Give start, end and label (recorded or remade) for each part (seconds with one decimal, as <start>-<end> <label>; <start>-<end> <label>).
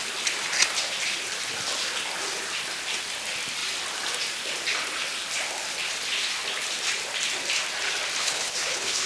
0.0-8.2 recorded; 8.2-9.1 remade